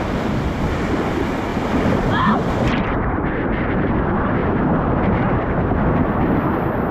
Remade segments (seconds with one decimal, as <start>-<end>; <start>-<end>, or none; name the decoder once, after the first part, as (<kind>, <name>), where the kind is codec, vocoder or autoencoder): 4.4-5.4 (vocoder, BigVGAN v2)